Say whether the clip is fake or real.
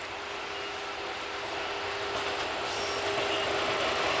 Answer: real